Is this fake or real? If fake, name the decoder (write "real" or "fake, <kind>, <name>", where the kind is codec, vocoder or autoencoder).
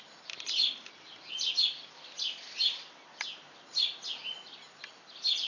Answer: real